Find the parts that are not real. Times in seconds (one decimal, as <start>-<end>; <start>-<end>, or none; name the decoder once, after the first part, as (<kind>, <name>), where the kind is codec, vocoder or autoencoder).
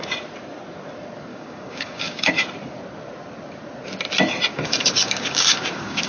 1.3-2.3 (codec, DAC); 4.5-6.1